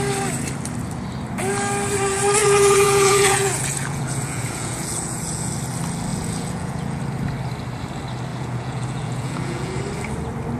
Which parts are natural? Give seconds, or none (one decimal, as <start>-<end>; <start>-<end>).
0.0-2.4; 5.5-6.1; 7.0-8.3; 9.8-10.6